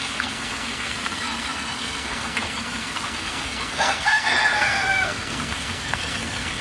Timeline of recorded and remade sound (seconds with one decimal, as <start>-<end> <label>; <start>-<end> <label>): 0.0-6.6 remade